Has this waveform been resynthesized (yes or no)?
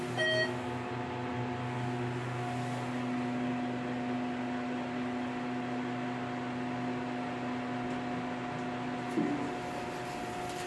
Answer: no